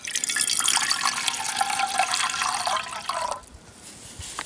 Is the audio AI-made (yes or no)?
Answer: no